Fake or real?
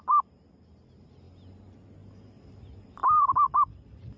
real